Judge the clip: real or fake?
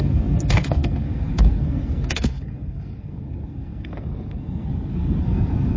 fake